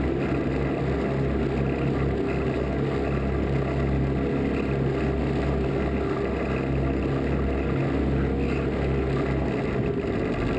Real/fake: real